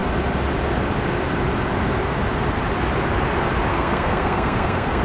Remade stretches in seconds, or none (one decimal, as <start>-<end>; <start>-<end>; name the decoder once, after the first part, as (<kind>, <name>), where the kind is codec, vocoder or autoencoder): 3.7-5.0 (codec, SNAC)